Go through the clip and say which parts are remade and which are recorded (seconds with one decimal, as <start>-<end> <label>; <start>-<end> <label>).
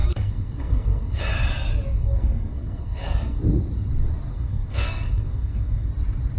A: 0.0-1.2 remade; 1.2-1.9 recorded; 1.9-3.4 remade; 3.4-4.3 recorded; 4.3-5.9 remade; 5.9-6.4 recorded